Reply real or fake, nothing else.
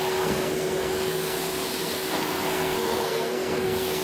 fake